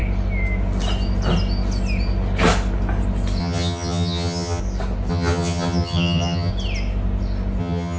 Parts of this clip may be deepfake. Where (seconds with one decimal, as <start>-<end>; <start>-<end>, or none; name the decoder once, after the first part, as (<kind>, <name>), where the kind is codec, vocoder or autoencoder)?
3.4-4.6 (vocoder, HiFi-GAN); 5.1-6.5; 7.6-8.0